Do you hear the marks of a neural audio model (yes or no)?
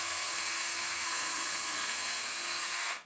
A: yes